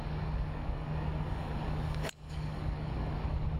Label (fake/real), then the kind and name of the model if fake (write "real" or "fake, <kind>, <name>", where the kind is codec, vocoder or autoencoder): fake, codec, DAC